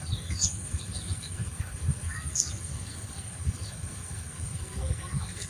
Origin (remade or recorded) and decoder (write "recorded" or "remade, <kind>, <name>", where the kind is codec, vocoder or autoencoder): remade, codec, SNAC